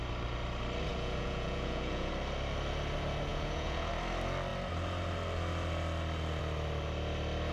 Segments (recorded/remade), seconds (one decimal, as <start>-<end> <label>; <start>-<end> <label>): 0.0-0.9 recorded; 0.9-2.1 remade; 2.1-3.3 recorded; 3.3-3.9 remade; 3.9-7.5 recorded